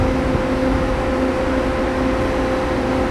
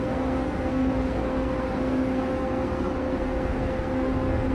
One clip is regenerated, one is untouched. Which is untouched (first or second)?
first